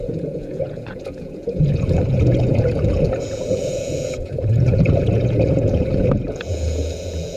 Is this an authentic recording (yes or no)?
no